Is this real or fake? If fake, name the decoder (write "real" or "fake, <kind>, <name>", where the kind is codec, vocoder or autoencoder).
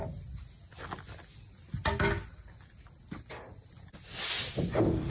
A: real